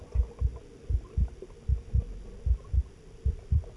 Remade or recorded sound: recorded